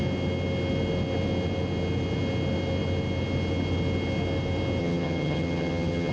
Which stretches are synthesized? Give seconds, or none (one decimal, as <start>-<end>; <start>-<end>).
4.8-6.1